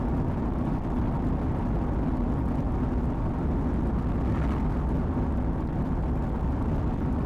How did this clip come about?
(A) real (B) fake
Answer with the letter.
A